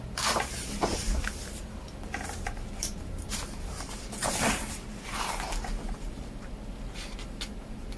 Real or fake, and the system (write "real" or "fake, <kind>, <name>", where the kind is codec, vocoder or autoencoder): fake, vocoder, BigVGAN v2